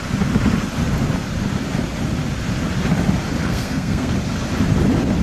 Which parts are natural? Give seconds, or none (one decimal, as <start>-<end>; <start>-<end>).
0.0-3.4; 4.1-5.2